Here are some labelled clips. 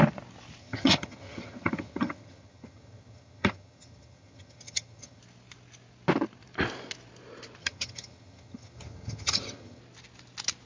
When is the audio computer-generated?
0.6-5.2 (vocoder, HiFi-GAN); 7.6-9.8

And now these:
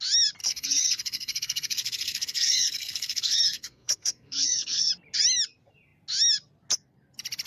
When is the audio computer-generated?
0.4-4.9 (codec, SNAC)

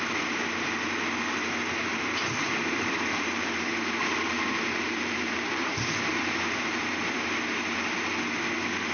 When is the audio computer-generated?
1.9-7.0 (vocoder, BigVGAN v2)

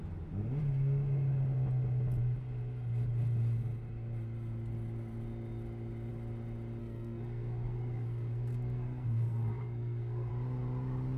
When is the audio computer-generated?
6.8-10.3 (codec, SNAC)

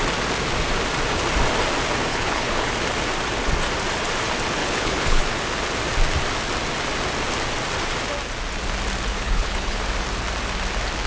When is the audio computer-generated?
2.1-2.7 (codec, HILCodec); 4.6-5.2; 9.1-9.8

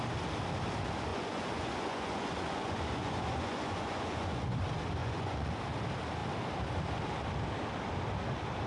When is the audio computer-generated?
1.1-4.6 (vocoder, Vocos); 5.0-5.5

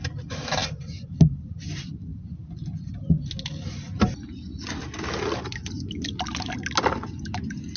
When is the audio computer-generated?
none